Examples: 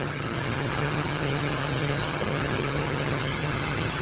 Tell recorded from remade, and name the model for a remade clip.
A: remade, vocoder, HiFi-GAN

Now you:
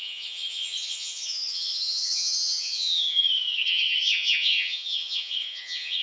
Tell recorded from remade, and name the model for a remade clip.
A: remade, vocoder, HiFi-GAN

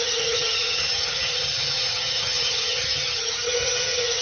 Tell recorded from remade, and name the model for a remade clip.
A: remade, vocoder, HiFi-GAN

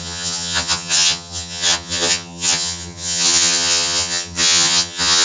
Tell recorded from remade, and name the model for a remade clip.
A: remade, vocoder, HiFi-GAN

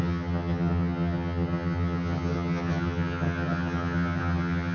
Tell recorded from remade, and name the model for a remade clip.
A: remade, vocoder, HiFi-GAN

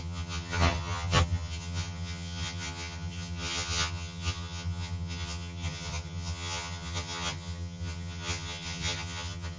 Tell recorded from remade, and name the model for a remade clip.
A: remade, vocoder, HiFi-GAN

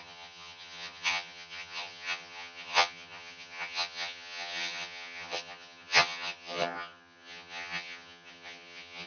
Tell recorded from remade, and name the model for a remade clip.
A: remade, vocoder, HiFi-GAN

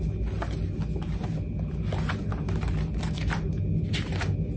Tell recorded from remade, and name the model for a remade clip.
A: recorded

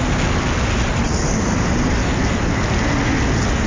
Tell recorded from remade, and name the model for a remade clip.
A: recorded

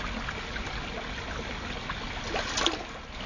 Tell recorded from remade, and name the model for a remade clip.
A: recorded